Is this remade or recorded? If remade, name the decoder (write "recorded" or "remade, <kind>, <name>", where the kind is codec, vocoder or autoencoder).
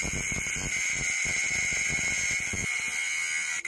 recorded